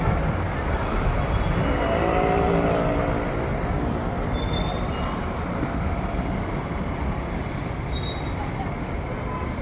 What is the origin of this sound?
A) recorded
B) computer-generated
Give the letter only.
A